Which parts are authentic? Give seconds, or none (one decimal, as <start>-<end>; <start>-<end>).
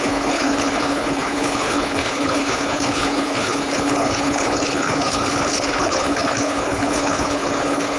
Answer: none